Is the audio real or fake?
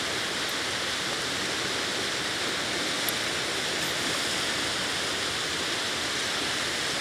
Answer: real